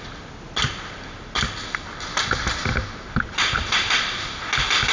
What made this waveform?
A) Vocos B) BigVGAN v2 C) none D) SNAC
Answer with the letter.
C